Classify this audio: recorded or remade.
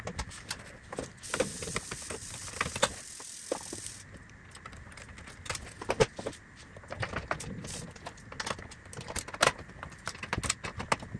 recorded